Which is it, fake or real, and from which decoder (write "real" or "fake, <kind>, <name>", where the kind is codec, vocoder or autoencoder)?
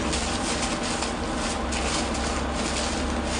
real